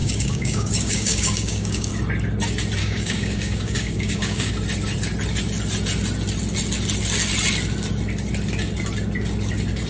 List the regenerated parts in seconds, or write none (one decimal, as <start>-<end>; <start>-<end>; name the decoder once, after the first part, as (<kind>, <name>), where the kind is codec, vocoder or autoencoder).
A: 0.0-1.9 (codec, DAC); 2.8-4.5